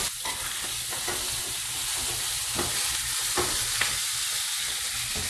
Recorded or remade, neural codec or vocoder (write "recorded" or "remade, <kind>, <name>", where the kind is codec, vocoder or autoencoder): recorded